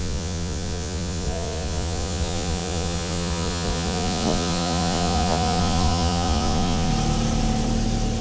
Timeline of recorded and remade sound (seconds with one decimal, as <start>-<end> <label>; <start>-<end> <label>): 0.0-6.9 remade; 6.9-8.2 recorded